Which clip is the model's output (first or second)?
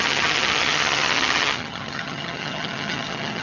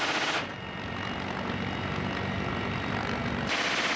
first